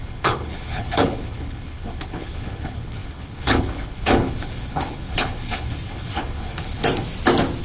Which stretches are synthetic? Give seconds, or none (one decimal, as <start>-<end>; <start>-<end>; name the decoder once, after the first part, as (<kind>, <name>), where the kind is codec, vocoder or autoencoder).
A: 0.0-6.8 (codec, HILCodec)